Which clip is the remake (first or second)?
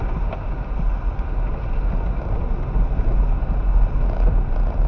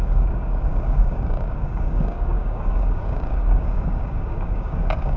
second